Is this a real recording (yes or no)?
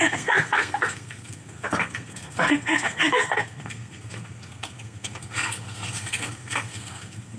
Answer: no